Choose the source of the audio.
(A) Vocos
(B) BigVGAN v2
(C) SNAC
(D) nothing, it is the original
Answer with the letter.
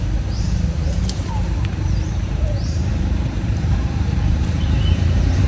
B